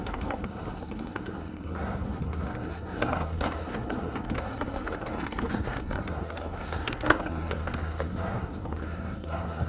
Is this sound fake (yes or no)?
yes